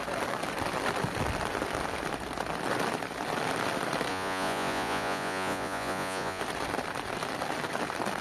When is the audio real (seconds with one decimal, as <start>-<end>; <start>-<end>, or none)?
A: 0.0-4.1; 6.4-8.2